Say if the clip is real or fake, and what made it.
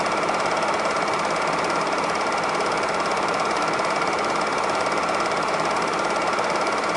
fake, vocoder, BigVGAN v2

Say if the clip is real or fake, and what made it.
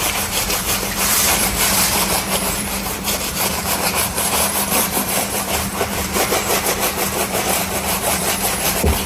fake, vocoder, BigVGAN v2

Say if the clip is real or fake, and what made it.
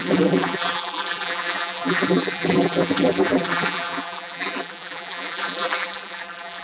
fake, vocoder, BigVGAN v2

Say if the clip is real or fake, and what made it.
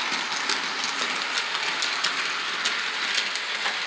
real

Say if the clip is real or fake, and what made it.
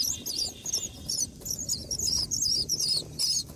real